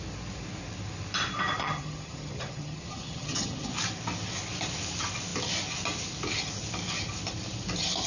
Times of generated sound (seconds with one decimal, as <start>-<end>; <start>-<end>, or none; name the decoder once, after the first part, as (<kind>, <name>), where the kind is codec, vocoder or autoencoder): 1.6-3.7 (vocoder, HiFi-GAN)